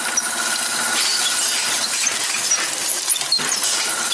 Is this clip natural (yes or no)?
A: no